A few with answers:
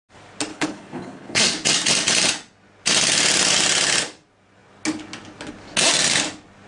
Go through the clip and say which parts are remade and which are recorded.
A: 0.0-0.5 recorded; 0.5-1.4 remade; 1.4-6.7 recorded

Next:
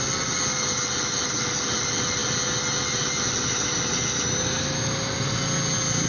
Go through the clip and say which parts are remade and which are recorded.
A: 0.0-6.1 recorded

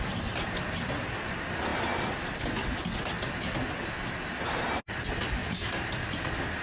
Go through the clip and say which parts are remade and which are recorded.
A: 0.0-6.6 recorded